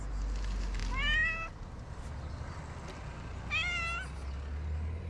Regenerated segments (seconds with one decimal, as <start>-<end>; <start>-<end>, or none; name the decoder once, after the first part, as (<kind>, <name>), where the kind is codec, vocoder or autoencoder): none